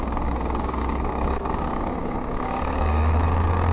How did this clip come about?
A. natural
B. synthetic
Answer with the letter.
B